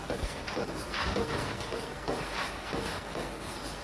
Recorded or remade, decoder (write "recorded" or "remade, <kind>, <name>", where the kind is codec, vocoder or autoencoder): remade, codec, SNAC